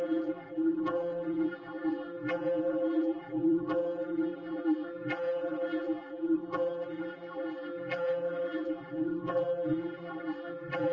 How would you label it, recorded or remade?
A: remade